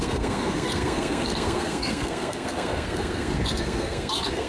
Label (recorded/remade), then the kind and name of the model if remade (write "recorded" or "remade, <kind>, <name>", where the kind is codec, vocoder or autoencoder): remade, codec, SNAC